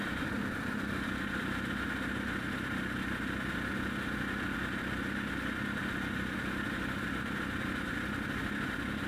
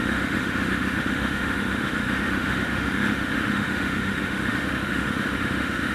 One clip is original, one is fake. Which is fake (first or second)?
second